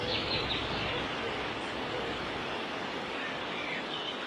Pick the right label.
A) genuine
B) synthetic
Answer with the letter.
B